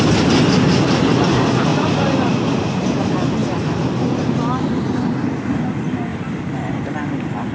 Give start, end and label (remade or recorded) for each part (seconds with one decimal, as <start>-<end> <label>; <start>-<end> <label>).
0.0-1.7 recorded; 1.7-2.6 remade; 2.6-6.1 recorded; 6.1-6.9 remade; 6.9-7.5 recorded